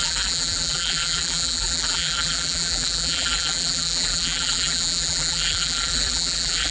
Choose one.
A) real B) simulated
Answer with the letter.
B